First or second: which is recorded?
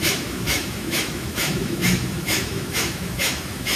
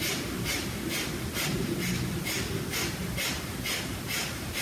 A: second